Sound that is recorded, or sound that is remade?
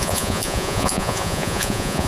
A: remade